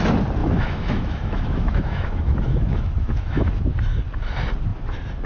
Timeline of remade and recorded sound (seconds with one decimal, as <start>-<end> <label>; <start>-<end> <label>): 0.0-0.4 recorded; 0.4-3.6 remade; 3.6-5.3 recorded